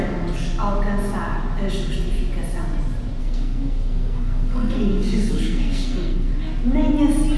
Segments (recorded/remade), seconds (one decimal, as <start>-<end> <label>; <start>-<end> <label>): 0.0-3.2 recorded; 3.2-6.3 remade; 6.3-7.4 recorded